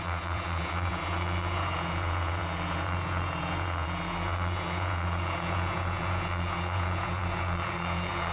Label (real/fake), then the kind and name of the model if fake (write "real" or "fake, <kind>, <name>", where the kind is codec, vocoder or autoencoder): fake, vocoder, Vocos